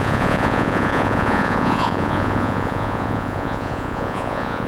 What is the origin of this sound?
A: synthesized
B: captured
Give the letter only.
A